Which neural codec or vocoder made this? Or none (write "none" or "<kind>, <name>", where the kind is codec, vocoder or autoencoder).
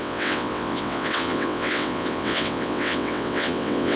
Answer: vocoder, WaveNeXt